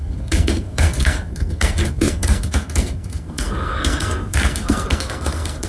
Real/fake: fake